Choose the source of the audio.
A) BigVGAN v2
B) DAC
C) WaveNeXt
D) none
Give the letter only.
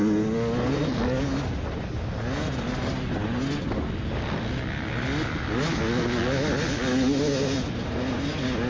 D